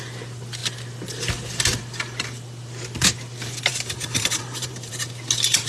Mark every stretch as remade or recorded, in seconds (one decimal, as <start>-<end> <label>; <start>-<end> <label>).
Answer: 0.0-3.7 recorded; 3.7-4.9 remade; 4.9-5.7 recorded